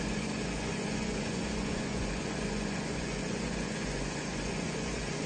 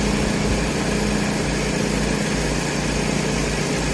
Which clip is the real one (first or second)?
second